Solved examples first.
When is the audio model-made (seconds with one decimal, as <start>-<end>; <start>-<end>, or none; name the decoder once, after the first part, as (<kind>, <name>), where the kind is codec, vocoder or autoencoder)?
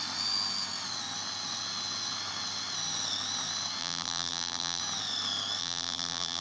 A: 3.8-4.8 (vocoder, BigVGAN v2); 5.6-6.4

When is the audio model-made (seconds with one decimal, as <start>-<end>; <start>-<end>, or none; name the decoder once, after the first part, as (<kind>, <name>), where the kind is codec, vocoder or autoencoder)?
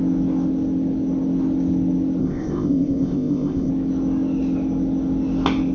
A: 2.2-3.7 (codec, ZipCodec)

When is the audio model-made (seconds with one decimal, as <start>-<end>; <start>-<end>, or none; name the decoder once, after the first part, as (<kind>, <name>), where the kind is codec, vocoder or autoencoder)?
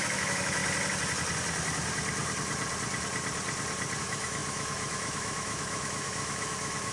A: 0.0-0.6 (autoencoder, DAC-VAE); 4.0-6.9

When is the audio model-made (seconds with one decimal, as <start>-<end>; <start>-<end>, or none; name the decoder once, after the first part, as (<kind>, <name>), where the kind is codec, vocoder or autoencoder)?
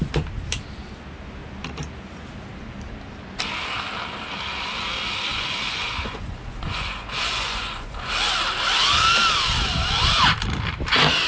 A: 5.3-8.1 (vocoder, Vocos)